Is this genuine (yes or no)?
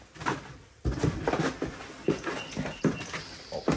no